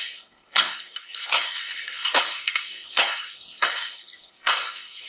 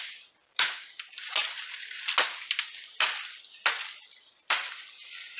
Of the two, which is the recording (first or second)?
second